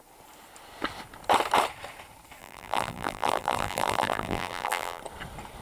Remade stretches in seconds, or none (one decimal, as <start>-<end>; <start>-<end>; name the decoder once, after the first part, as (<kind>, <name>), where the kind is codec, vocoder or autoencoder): 2.4-5.0 (vocoder, BigVGAN v2)